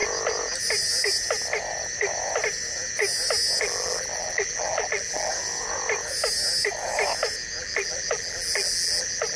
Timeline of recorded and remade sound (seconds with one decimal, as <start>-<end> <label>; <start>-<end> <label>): 0.0-3.6 recorded; 3.6-5.3 remade; 5.3-7.6 recorded; 7.6-9.4 remade